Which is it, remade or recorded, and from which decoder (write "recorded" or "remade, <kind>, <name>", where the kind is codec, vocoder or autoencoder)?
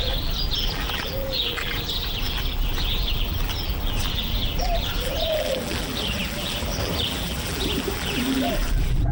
remade, vocoder, BigVGAN v2